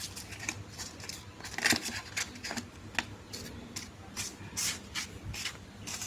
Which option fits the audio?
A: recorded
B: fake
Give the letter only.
A